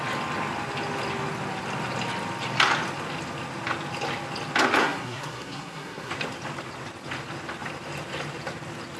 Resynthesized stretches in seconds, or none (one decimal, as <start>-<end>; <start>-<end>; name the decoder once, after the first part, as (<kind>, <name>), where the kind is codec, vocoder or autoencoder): 4.8-6.1 (codec, SNAC)